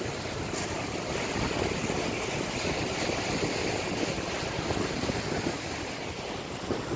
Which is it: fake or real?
real